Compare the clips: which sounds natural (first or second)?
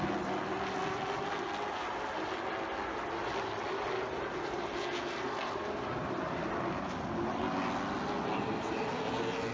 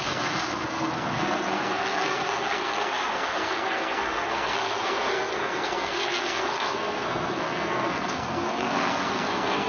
first